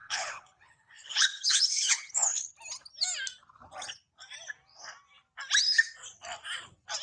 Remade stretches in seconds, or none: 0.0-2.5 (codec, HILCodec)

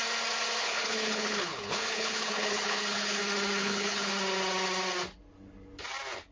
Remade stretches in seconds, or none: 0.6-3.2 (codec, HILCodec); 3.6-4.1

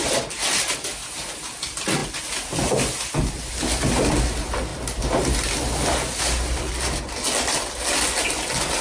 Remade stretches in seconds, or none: none